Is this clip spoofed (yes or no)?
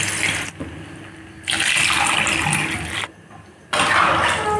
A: no